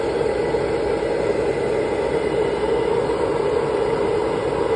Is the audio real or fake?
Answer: real